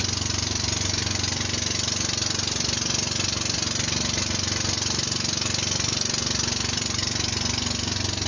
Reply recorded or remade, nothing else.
recorded